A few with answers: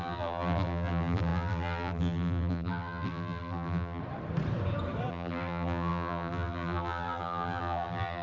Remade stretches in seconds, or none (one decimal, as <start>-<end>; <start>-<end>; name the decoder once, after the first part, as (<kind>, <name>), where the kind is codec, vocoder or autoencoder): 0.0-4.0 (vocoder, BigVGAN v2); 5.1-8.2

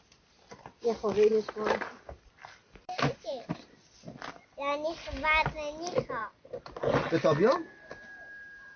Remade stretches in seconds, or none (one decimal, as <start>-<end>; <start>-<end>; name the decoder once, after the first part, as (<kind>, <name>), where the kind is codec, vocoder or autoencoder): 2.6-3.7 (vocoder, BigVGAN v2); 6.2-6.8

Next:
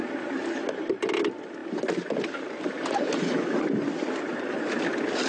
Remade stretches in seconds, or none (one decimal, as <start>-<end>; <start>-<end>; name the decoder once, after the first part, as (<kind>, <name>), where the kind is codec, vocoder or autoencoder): none

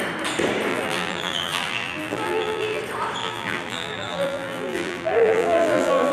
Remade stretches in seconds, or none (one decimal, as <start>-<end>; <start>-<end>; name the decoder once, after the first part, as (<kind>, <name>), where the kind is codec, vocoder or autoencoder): 0.7-2.8 (vocoder, BigVGAN v2); 3.2-6.1